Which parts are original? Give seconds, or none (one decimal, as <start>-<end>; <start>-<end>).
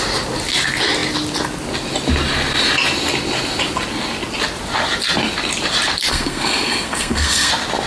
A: 0.0-6.1; 7.5-7.9